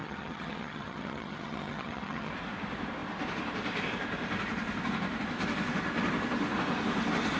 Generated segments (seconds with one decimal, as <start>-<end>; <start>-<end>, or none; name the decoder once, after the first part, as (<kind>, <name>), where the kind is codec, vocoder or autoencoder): 0.0-2.3 (vocoder, HiFi-GAN)